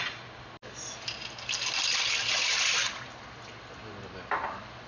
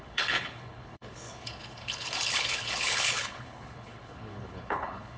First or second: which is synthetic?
second